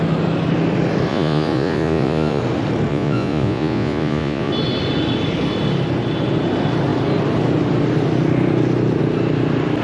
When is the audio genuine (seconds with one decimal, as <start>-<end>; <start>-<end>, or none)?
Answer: 0.0-1.1; 2.4-2.9; 4.5-9.8